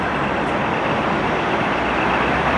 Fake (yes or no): no